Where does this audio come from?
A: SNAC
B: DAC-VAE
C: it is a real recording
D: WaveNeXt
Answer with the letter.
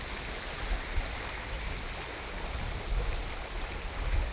C